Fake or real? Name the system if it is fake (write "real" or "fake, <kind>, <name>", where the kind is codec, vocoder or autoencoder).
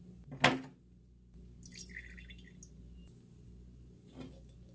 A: real